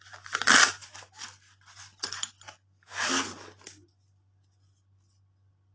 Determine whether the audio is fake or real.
real